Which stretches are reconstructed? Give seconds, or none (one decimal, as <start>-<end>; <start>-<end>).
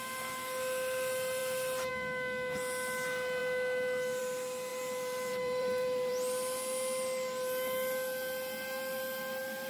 4.7-6.1